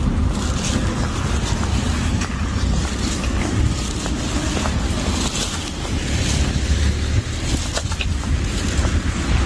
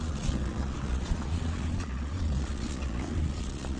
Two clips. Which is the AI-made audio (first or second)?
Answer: second